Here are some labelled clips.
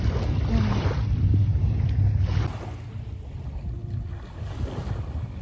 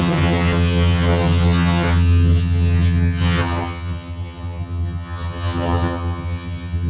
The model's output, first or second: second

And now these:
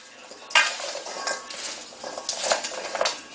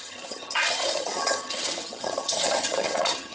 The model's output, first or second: second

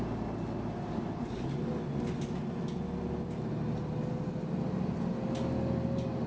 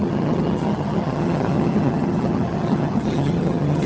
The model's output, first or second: second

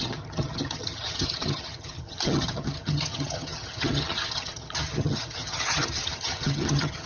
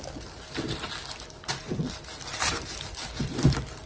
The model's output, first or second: first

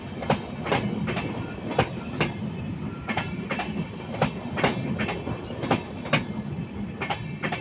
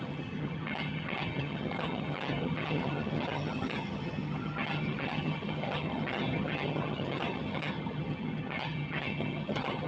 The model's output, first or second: second